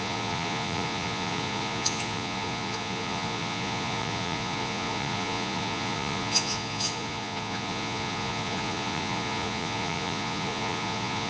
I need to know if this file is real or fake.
fake